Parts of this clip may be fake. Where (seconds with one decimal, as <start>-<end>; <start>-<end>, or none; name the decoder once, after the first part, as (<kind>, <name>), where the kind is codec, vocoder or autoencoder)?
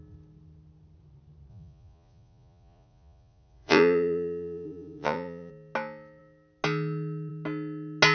1.5-5.5 (vocoder, Vocos)